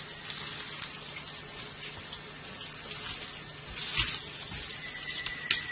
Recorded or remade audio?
recorded